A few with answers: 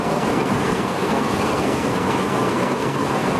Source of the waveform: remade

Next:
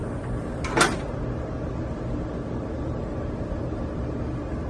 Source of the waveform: recorded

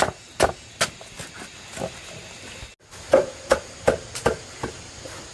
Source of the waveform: recorded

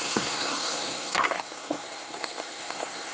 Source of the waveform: remade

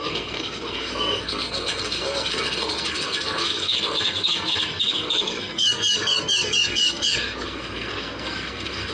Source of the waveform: remade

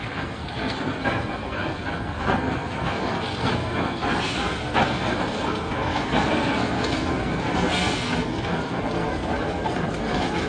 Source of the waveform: remade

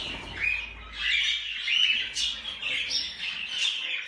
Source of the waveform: recorded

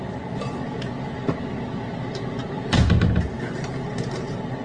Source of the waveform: recorded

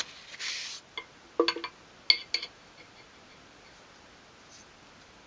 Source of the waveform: recorded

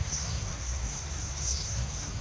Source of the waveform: remade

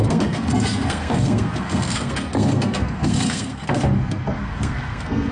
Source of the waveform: remade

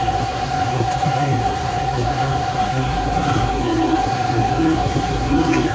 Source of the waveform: remade